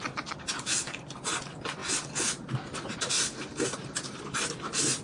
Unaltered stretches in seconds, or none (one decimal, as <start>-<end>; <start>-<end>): 0.0-5.0